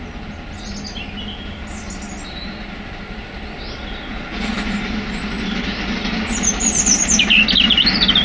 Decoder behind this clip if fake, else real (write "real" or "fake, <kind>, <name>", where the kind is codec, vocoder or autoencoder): real